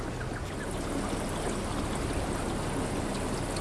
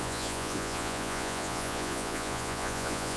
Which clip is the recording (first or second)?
first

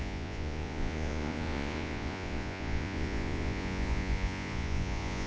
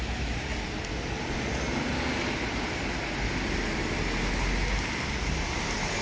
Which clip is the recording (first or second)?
second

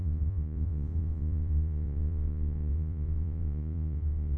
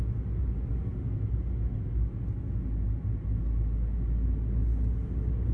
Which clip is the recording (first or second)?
second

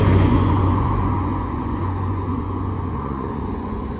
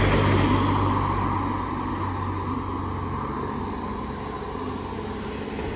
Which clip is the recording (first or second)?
second